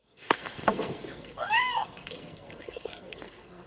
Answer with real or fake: fake